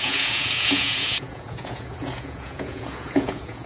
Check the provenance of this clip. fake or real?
fake